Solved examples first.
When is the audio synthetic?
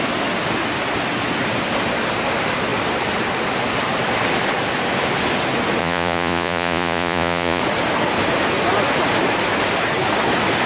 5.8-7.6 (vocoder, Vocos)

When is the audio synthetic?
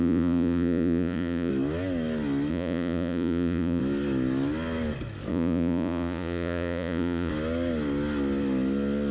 0.0-1.5 (vocoder, Vocos); 2.5-3.8; 5.3-7.3